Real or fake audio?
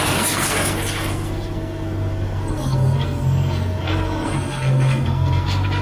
fake